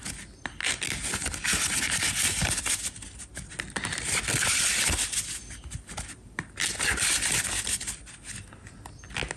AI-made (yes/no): no